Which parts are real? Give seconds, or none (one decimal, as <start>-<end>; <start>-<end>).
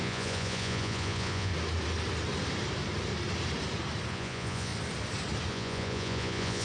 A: 1.5-4.1; 4.7-5.5